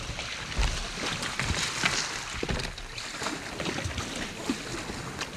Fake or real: real